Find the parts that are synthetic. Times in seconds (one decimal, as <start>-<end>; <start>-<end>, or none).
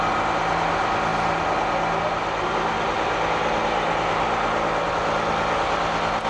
none